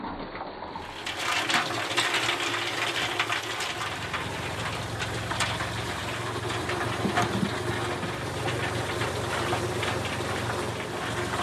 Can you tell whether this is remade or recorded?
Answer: recorded